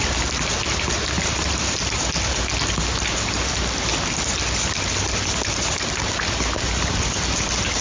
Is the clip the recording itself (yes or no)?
yes